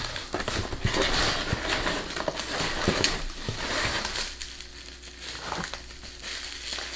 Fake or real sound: real